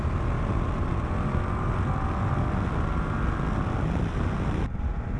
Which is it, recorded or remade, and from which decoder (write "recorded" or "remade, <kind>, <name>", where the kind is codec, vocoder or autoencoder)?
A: recorded